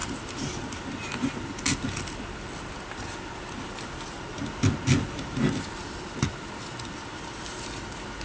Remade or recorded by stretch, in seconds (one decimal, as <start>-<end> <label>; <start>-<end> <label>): 0.0-8.2 recorded